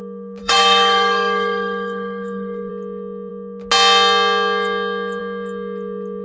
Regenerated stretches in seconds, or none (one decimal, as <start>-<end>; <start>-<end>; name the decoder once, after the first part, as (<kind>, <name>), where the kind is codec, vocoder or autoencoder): 0.4-2.7 (codec, DAC)